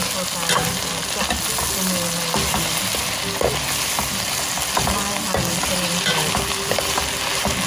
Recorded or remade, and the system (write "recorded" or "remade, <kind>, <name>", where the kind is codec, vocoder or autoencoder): recorded